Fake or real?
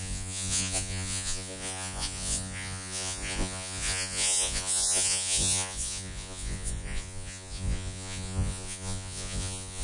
fake